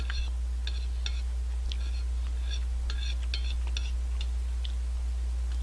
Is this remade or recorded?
recorded